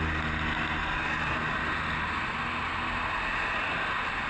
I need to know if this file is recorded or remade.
recorded